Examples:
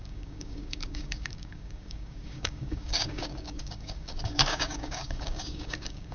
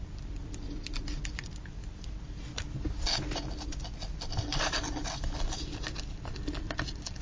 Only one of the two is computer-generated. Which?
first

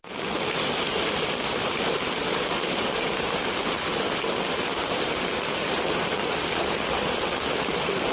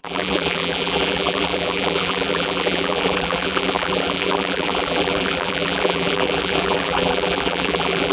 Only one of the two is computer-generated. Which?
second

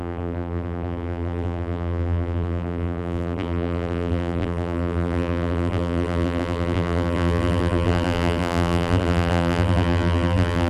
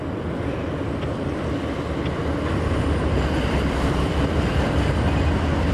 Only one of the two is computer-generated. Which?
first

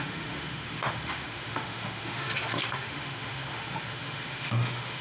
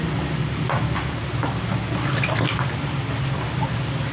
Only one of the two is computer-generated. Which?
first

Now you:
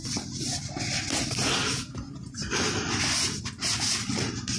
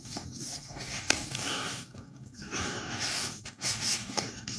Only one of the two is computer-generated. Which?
second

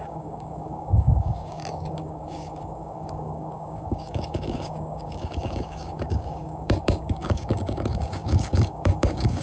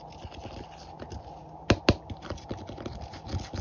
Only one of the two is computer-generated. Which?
first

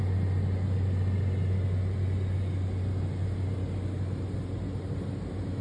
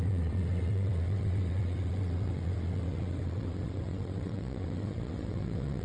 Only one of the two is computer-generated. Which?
second